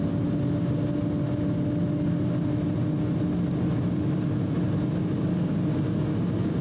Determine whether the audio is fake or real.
real